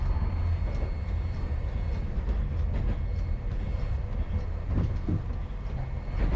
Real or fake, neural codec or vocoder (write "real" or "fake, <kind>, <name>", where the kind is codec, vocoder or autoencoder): real